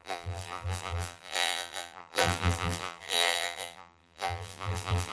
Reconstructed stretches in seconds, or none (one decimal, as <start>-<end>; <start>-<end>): 0.0-5.1